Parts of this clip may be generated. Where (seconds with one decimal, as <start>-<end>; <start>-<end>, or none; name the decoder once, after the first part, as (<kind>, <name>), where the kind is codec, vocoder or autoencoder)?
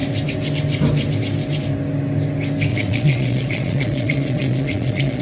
2.7-5.2 (vocoder, Vocos)